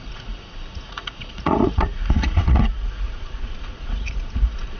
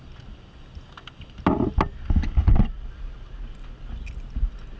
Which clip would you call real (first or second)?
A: second